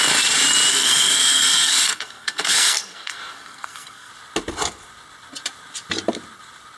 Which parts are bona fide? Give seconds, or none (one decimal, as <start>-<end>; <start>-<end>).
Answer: 0.0-0.7; 4.1-6.8

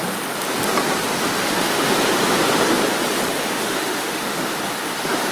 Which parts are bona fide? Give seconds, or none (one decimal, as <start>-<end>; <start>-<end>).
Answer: 0.0-1.2; 1.9-3.4; 4.4-5.3

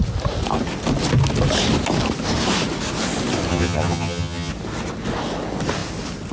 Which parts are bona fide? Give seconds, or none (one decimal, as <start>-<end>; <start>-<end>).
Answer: 0.0-3.5; 4.5-6.3